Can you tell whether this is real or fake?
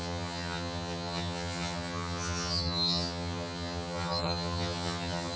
fake